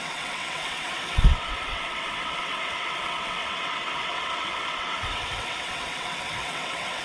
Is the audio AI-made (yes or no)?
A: yes